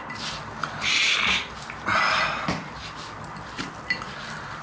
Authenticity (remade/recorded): recorded